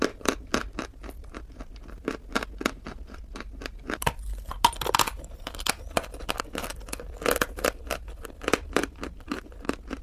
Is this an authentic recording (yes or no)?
yes